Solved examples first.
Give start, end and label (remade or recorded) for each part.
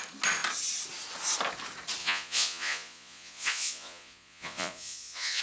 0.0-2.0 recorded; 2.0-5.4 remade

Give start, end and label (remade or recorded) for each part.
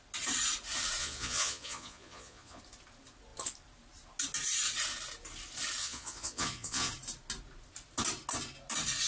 0.0-1.0 recorded; 1.0-2.6 remade; 2.6-5.8 recorded; 5.8-6.9 remade; 6.9-9.1 recorded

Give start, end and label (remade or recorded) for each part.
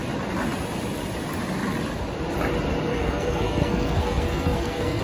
0.0-2.9 recorded; 2.9-5.0 remade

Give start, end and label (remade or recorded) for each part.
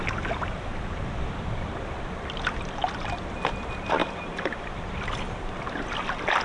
0.0-6.4 recorded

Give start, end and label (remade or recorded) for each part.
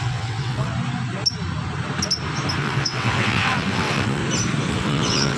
0.0-0.7 remade; 0.7-2.6 recorded; 2.6-4.2 remade; 4.2-4.7 recorded; 4.7-5.4 remade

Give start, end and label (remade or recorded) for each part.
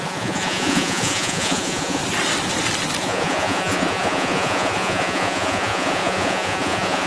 0.0-2.0 remade; 2.0-3.0 recorded; 3.0-7.1 remade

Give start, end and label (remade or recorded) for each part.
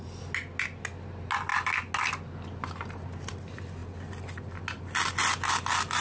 0.0-6.0 recorded